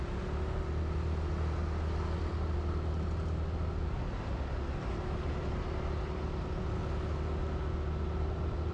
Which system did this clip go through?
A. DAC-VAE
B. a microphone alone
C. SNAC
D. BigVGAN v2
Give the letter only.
B